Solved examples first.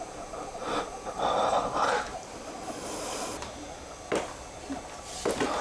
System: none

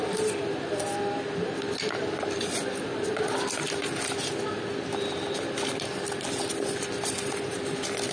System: none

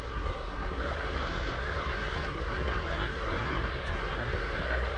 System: codec, SNAC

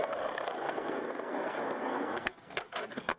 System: codec, SNAC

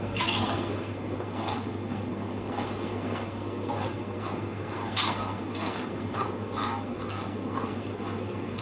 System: codec, SNAC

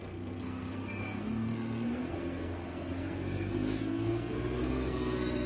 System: codec, SNAC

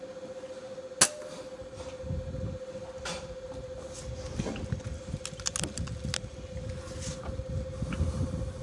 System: none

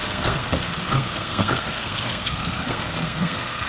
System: codec, SNAC